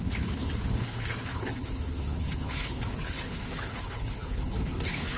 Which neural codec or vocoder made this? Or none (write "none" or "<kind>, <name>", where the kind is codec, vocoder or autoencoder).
codec, HILCodec